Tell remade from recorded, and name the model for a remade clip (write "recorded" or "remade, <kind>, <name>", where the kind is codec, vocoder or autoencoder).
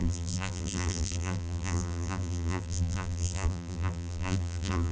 remade, vocoder, BigVGAN v2